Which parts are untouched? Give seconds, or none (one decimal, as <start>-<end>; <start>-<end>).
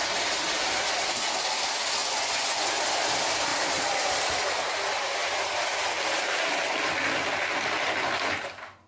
0.0-2.0; 2.7-8.9